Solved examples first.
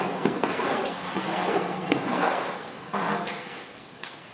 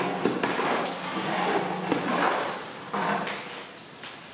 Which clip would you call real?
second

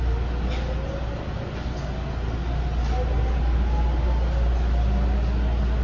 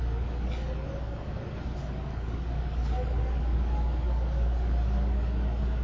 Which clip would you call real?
first